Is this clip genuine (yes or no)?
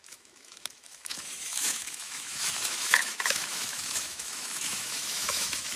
no